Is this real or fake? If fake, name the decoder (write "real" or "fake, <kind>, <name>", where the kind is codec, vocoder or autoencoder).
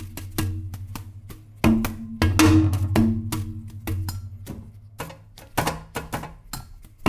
real